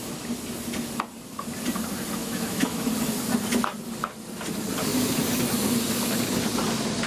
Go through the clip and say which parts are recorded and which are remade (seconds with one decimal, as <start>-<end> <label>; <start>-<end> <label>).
0.0-2.2 recorded; 2.2-2.9 remade; 2.9-7.1 recorded